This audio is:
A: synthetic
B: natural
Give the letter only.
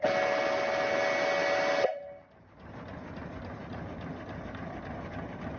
B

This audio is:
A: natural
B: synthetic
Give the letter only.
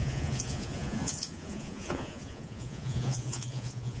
B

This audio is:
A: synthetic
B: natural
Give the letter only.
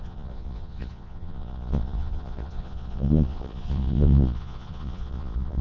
A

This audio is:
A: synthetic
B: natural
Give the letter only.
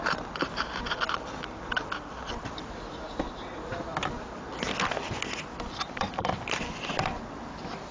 B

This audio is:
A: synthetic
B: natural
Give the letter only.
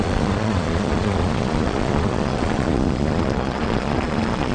A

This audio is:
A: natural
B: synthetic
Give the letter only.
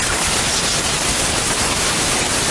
A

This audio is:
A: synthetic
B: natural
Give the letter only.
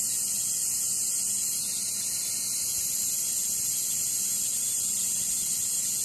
B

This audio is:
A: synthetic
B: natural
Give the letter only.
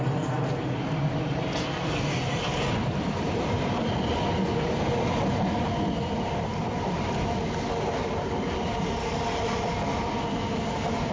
B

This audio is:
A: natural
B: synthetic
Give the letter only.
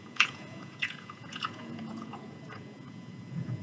B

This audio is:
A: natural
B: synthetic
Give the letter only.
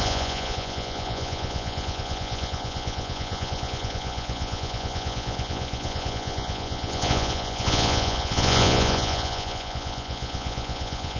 B